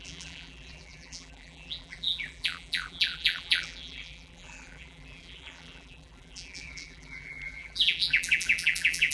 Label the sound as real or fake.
fake